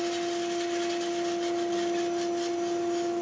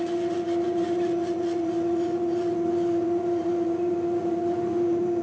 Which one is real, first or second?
first